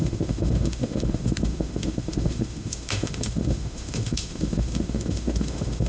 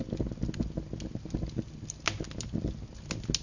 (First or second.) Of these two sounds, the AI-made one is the first